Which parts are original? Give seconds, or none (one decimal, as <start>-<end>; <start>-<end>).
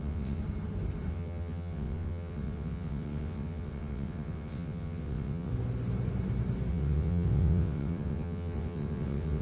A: 0.4-1.1; 5.5-6.7